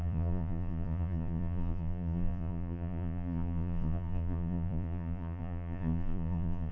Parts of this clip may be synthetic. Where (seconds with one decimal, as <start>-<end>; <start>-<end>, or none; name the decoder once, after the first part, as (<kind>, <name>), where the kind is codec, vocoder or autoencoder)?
0.0-6.7 (vocoder, Vocos)